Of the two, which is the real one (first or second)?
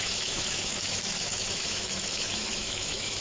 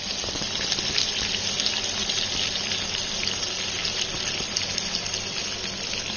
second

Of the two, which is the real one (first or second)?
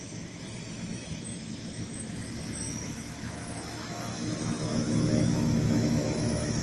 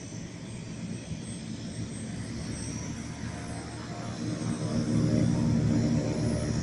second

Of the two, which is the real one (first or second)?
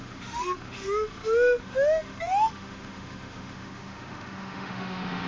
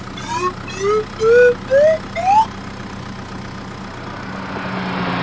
second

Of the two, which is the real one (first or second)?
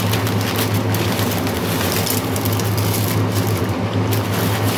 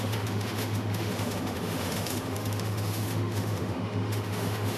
first